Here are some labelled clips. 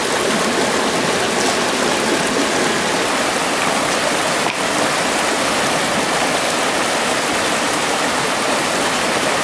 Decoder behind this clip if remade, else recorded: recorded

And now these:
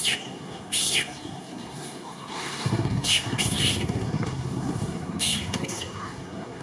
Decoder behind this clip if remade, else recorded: remade, codec, SNAC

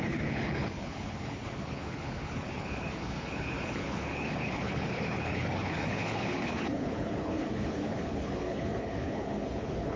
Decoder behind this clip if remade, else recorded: remade, codec, HILCodec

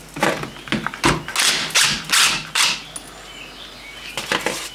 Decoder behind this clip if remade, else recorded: recorded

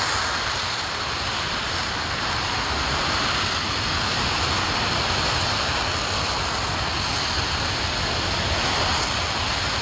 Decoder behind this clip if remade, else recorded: recorded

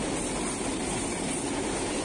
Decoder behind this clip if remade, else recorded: recorded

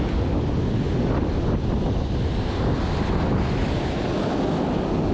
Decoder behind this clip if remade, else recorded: recorded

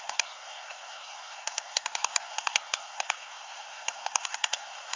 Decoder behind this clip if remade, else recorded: remade, codec, SNAC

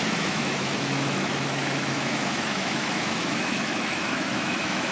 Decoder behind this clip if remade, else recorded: remade, autoencoder, DAC-VAE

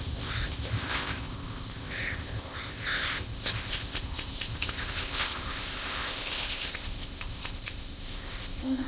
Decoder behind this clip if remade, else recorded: remade, codec, ZipCodec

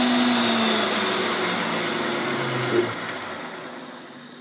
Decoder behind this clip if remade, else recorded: recorded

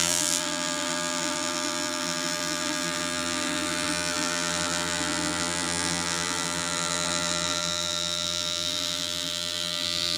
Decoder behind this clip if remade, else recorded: remade, vocoder, BigVGAN v2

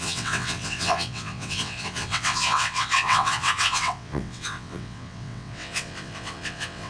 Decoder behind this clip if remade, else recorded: remade, vocoder, WaveNeXt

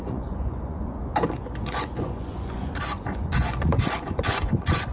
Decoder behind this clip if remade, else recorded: remade, vocoder, Vocos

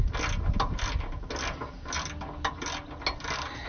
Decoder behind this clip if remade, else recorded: recorded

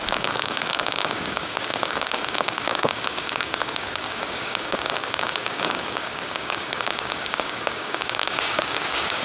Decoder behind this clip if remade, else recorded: remade, codec, DAC